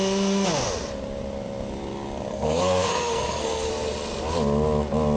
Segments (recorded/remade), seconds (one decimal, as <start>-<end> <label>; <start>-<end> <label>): 0.0-2.3 recorded; 2.3-3.7 remade; 3.7-5.2 recorded